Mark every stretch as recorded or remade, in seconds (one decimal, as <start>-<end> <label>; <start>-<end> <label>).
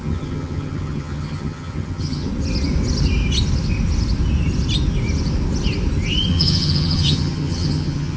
0.0-2.3 remade; 2.3-6.3 recorded; 6.3-8.2 remade